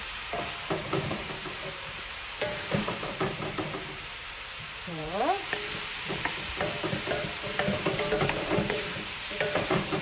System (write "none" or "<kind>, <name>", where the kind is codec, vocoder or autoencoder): vocoder, BigVGAN v2